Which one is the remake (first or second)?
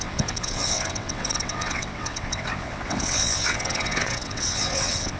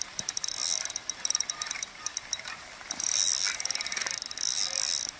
first